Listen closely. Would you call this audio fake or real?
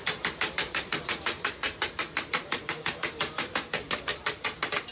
fake